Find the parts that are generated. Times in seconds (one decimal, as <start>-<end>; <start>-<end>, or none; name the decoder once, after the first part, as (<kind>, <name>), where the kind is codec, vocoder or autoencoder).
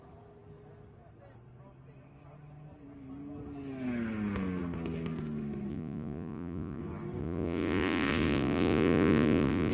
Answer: 5.7-6.8 (vocoder, Vocos); 7.2-9.7